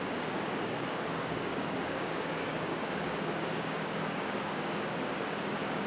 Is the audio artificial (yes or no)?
yes